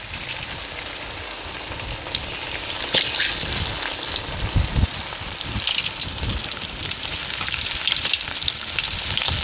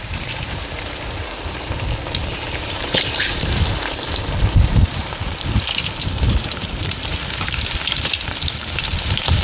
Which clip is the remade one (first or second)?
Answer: second